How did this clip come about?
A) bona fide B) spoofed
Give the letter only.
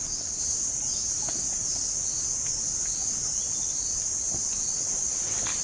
A